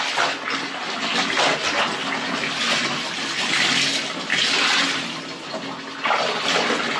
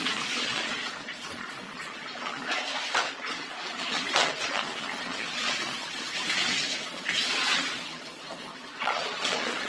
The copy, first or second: second